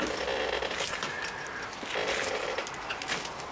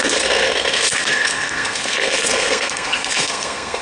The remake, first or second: second